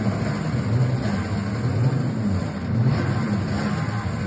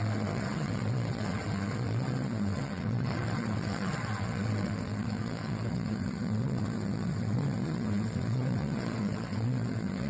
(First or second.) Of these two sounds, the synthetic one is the second